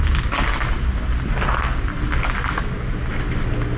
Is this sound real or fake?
real